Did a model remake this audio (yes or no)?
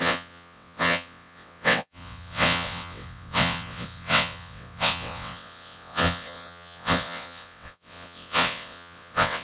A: yes